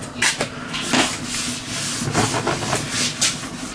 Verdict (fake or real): real